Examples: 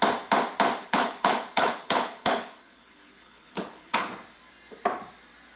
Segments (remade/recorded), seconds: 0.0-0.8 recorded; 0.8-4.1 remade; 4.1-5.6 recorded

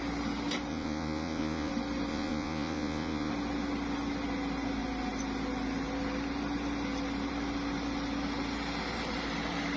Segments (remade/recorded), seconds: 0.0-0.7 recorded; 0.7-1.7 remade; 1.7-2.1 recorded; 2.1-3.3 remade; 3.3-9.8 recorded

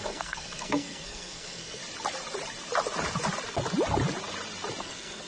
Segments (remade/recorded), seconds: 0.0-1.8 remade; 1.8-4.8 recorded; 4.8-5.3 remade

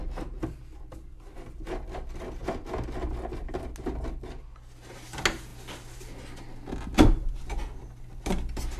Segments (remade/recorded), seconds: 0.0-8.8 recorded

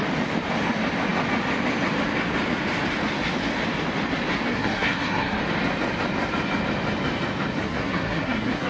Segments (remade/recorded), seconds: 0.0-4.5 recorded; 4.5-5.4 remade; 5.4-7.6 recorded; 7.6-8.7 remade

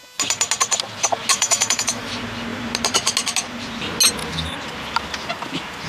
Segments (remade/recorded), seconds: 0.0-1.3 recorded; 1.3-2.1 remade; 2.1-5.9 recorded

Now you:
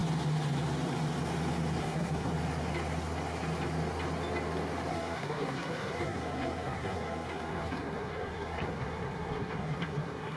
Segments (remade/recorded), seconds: 0.0-1.8 recorded; 1.8-2.3 remade; 2.3-4.9 recorded; 4.9-10.4 remade

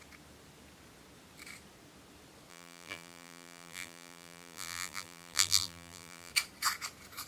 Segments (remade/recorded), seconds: 0.0-2.5 recorded; 2.5-6.3 remade; 6.3-7.3 recorded